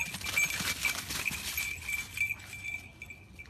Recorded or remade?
recorded